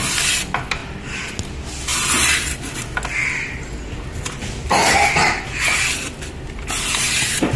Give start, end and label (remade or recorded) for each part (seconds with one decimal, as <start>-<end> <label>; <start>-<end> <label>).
0.0-0.8 recorded; 0.8-1.3 remade; 1.3-7.6 recorded